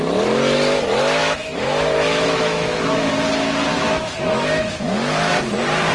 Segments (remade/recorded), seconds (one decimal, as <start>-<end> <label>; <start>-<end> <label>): 0.0-1.2 recorded; 1.2-3.1 remade; 3.1-3.7 recorded; 3.7-5.3 remade; 5.3-5.9 recorded